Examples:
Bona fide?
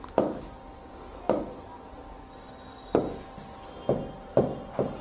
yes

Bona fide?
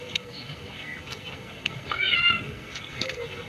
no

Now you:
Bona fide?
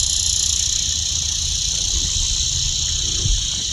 yes